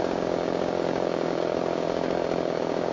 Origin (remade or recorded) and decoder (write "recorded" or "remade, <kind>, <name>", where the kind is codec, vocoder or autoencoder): remade, codec, DAC